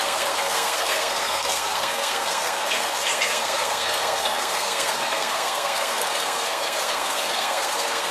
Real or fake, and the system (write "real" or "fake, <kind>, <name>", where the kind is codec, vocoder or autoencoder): fake, codec, SNAC